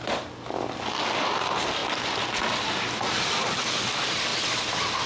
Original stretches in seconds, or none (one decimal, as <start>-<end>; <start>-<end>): 0.0-5.1